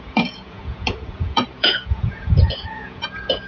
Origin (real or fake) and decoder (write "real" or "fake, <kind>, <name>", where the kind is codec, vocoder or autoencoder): fake, vocoder, Vocos